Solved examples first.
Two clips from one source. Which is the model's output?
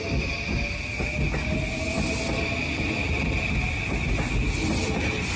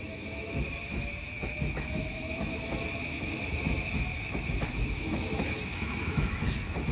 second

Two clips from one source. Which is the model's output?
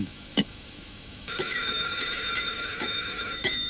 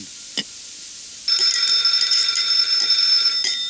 first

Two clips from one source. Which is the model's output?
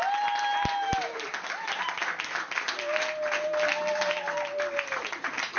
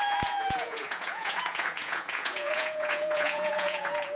second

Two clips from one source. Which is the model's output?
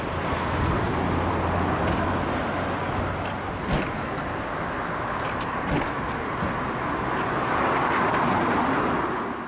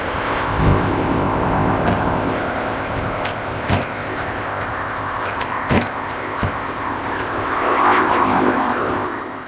second